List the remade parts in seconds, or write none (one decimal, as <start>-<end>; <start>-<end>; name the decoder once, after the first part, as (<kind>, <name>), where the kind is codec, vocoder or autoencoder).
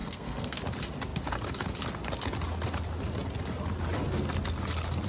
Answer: 0.0-0.6 (codec, SNAC)